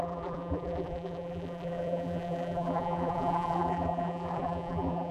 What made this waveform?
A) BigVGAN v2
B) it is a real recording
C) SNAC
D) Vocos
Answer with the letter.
A